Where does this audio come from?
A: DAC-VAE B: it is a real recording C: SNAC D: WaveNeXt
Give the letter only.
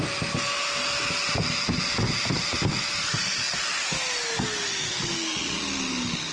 B